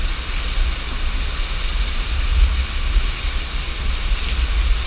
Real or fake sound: real